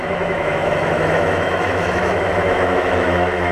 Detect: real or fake fake